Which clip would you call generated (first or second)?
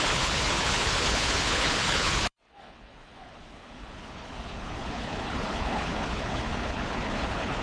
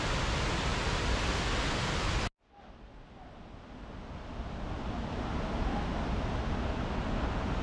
first